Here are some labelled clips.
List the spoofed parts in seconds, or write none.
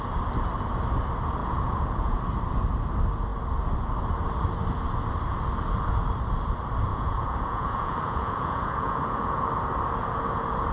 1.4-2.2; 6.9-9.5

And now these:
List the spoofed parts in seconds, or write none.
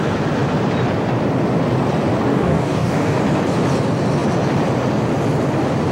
2.3-3.2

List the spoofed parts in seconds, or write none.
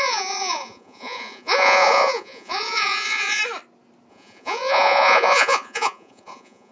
0.0-3.4; 4.1-6.7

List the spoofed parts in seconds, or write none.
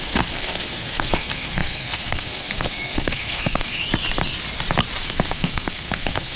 0.0-3.8; 5.0-6.4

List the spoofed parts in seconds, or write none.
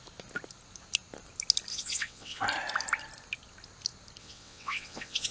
1.7-2.4; 4.2-5.3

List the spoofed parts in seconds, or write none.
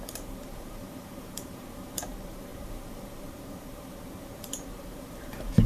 0.0-5.7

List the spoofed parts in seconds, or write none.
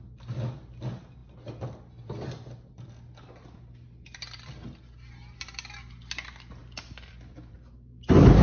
none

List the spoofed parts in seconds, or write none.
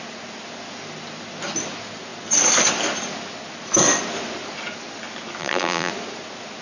5.4-5.9